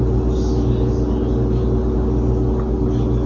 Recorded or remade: recorded